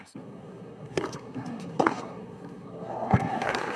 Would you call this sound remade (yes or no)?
yes